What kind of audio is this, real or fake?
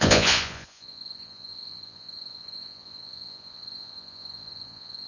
fake